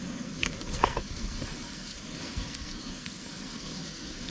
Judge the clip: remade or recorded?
remade